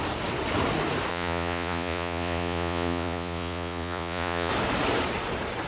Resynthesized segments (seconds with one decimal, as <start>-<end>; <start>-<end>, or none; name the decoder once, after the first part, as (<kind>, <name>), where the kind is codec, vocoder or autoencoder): 1.1-4.5 (vocoder, Vocos)